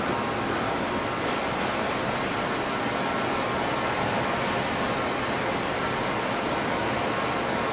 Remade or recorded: recorded